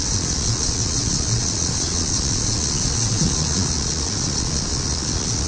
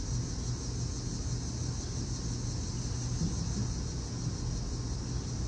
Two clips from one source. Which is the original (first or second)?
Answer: second